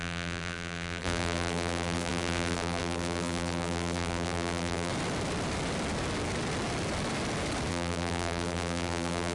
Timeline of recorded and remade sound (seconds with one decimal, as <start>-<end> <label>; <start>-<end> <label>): 0.0-4.9 remade; 4.9-7.7 recorded; 7.7-9.3 remade